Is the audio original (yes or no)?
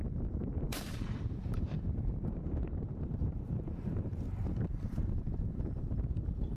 no